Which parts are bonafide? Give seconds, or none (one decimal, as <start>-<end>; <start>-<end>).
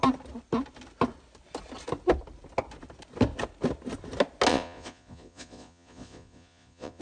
0.0-4.5